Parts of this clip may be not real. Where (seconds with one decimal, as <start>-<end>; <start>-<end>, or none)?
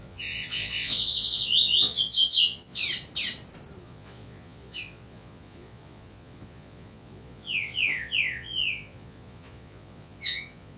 0.0-2.8; 3.8-10.8